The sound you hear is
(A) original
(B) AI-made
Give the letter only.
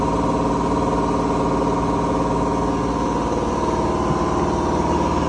A